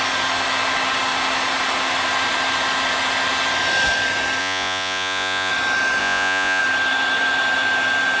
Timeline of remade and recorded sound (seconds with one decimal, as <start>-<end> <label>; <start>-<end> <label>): 0.0-4.4 recorded; 4.4-5.5 remade; 5.5-6.0 recorded; 6.0-6.6 remade; 6.6-8.2 recorded